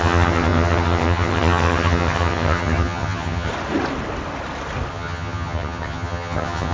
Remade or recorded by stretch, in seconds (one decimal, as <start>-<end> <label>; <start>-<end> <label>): 0.0-3.5 remade; 3.5-4.9 recorded; 4.9-6.7 remade